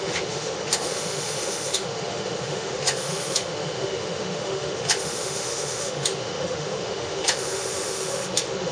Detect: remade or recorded remade